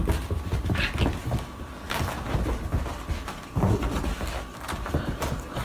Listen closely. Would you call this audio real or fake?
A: real